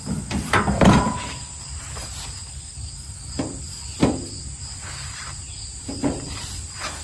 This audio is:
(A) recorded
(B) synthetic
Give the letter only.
A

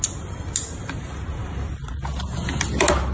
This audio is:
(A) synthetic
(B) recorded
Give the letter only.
B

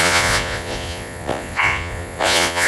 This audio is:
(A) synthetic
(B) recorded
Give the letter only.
A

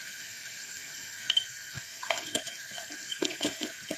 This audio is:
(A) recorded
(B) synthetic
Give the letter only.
B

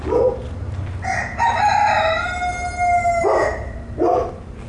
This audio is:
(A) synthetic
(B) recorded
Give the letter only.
B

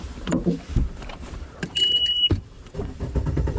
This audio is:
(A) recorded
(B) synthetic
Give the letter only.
B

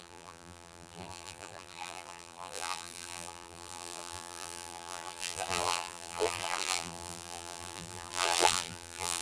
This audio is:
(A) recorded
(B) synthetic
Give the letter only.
B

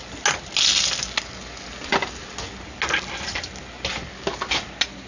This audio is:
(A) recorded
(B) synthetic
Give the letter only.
A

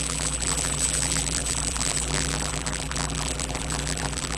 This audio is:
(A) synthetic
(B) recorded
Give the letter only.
A